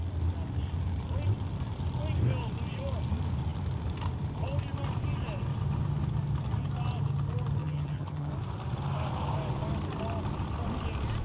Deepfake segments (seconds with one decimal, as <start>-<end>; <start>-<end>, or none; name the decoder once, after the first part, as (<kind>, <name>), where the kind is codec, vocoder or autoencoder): 7.6-8.3 (vocoder, HiFi-GAN)